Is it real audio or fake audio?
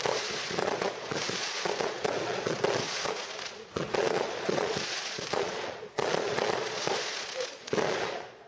fake